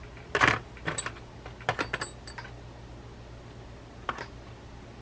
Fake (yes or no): no